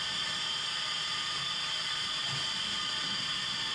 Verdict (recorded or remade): recorded